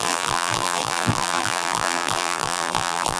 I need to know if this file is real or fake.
fake